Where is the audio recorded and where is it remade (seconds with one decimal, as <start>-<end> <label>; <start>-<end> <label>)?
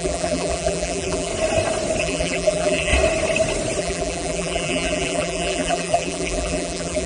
0.0-1.3 remade; 1.3-2.0 recorded; 2.0-2.9 remade; 2.9-3.8 recorded; 3.8-7.1 remade